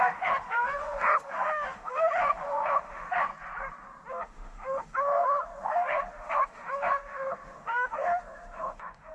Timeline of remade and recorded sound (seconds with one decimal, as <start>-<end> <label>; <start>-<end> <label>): 0.0-3.3 remade; 3.3-4.1 recorded; 4.1-9.1 remade